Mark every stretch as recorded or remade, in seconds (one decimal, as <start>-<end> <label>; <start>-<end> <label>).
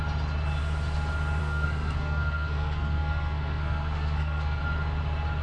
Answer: 0.0-1.4 recorded; 1.4-4.6 remade; 4.6-5.4 recorded